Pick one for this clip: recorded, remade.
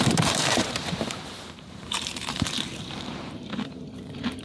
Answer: remade